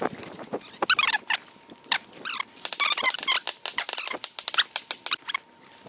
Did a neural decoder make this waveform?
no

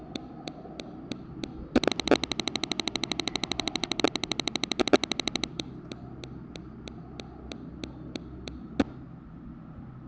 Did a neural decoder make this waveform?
no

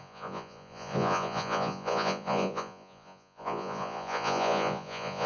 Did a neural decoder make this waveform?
yes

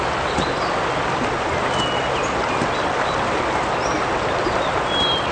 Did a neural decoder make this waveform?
no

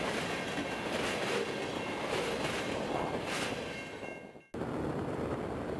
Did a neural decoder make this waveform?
no